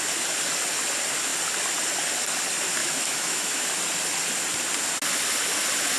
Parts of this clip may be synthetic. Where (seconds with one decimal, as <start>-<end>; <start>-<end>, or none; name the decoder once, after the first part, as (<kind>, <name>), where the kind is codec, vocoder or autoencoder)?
2.8-3.6 (autoencoder, DAC-VAE)